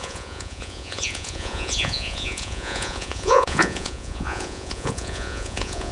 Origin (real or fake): fake